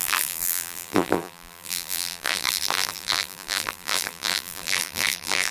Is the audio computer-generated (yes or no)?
yes